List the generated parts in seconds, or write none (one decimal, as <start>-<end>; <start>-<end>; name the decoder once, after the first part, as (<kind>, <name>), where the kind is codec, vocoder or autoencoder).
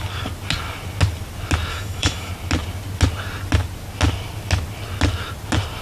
1.7-2.3 (autoencoder, DAC-VAE)